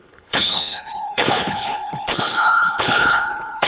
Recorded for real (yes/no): no